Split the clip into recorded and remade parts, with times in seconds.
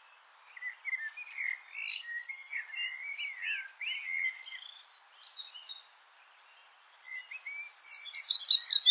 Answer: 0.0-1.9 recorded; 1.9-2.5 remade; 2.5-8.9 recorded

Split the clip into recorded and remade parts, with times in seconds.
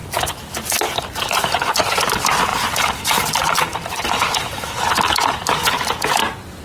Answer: 0.0-2.5 recorded; 2.5-3.6 remade; 3.6-6.6 recorded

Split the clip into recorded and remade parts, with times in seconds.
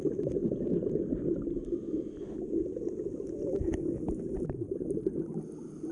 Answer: 0.0-0.4 remade; 0.4-1.9 recorded; 1.9-5.9 remade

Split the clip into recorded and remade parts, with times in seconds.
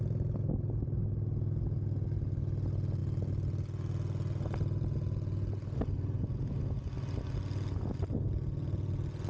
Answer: 0.0-9.3 recorded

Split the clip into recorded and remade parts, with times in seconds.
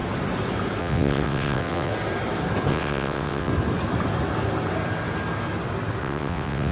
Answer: 0.0-0.8 recorded; 0.8-1.9 remade; 1.9-2.7 recorded; 2.7-3.5 remade; 3.5-6.0 recorded; 6.0-6.7 remade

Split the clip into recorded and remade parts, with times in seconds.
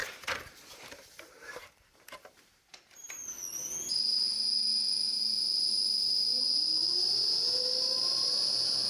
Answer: 0.0-3.1 remade; 3.1-6.8 recorded; 6.8-7.6 remade; 7.6-8.9 recorded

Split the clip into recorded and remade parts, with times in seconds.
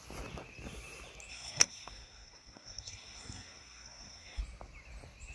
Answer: 0.0-1.3 recorded; 1.3-4.4 remade; 4.4-5.3 recorded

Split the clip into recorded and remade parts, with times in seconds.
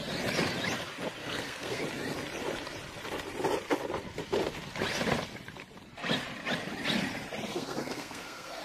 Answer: 0.0-1.2 recorded; 1.2-1.8 remade; 1.8-7.5 recorded; 7.5-8.6 remade